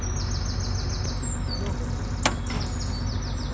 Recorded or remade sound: recorded